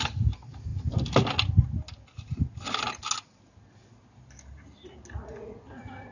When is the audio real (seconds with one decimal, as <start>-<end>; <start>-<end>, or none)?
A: 0.0-6.1